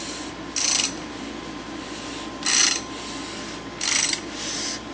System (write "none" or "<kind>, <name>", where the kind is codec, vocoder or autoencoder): none